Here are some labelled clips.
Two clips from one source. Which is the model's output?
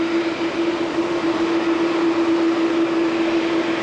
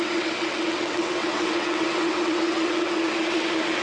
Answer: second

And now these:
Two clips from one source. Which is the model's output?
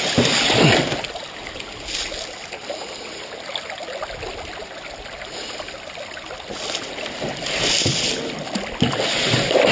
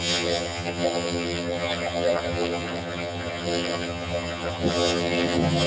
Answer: second